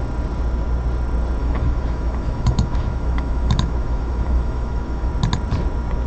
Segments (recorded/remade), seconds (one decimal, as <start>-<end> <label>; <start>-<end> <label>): 0.0-1.4 recorded; 1.4-5.1 remade; 5.1-6.1 recorded